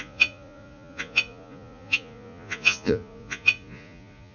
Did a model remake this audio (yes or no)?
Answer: yes